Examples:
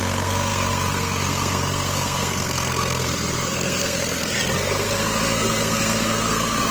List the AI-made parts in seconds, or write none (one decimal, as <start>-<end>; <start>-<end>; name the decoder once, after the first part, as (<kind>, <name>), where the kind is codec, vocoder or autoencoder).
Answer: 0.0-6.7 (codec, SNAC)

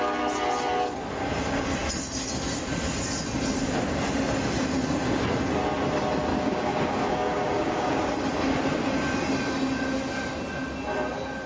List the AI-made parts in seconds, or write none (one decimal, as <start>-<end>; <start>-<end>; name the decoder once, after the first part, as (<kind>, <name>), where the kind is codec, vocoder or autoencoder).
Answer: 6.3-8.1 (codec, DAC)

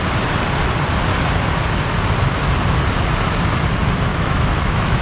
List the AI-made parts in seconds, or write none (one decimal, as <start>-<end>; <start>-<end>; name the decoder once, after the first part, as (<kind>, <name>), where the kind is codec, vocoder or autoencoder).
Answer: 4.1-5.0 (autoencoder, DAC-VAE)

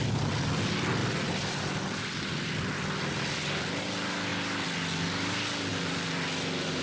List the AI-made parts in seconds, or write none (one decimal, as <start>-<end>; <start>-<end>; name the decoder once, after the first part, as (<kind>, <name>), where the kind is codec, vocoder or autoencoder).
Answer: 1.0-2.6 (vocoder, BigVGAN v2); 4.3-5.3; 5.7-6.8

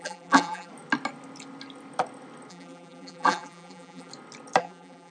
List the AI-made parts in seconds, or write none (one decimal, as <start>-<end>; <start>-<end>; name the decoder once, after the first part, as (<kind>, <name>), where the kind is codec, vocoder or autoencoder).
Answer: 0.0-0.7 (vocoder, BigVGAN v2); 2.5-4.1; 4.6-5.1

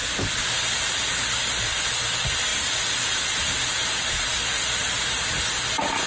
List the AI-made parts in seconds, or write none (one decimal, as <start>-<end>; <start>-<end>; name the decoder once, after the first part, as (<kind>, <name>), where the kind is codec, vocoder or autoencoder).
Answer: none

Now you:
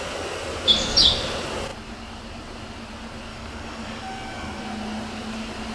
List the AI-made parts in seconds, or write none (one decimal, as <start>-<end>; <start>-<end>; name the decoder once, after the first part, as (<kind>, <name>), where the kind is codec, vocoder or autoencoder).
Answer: 3.3-4.6 (codec, DAC)

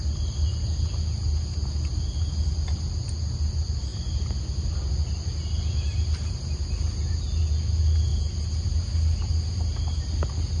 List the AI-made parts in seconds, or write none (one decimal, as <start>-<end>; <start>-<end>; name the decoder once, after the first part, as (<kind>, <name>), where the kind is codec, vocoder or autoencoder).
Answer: 8.1-8.8 (vocoder, BigVGAN v2)